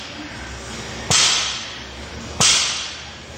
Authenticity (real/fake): real